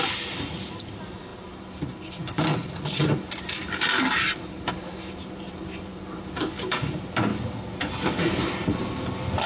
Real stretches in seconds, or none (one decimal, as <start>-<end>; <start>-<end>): 7.3-8.0